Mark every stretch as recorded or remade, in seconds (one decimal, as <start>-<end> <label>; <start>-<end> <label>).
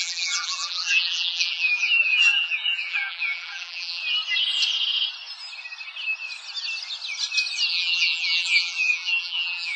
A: 0.0-4.0 remade; 4.0-7.7 recorded; 7.7-9.8 remade